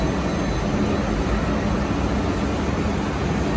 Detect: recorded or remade recorded